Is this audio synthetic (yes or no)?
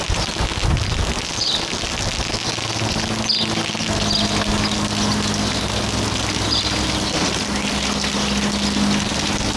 no